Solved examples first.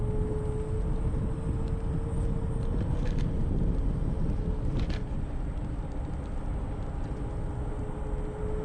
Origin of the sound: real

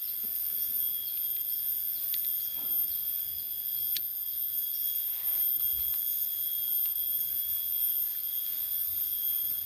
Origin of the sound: fake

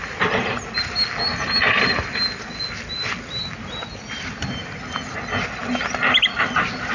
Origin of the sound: real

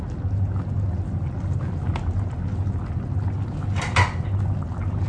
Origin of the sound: real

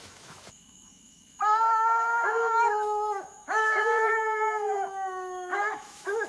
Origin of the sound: fake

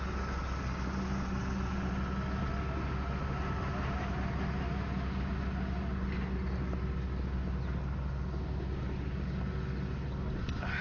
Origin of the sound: real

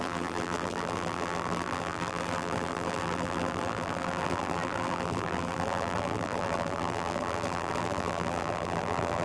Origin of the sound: fake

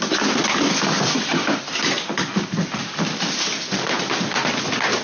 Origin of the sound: real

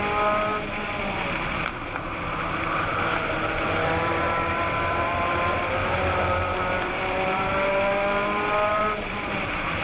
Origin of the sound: fake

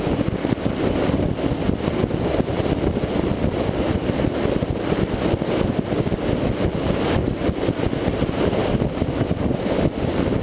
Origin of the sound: real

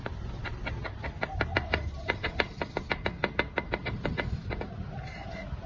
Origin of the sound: real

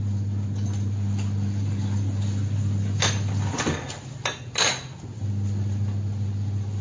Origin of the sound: real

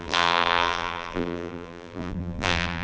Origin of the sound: fake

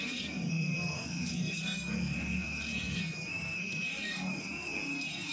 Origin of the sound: fake